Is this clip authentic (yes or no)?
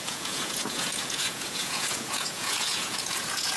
no